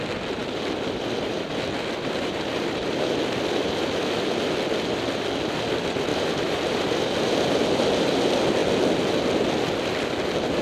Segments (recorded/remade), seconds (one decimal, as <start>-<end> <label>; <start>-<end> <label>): 0.0-0.4 recorded; 0.4-3.1 remade; 3.1-6.1 recorded; 6.1-7.6 remade; 7.6-10.6 recorded